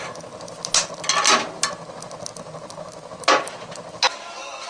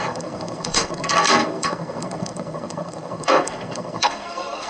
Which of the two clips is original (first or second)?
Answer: first